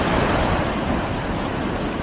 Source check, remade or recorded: recorded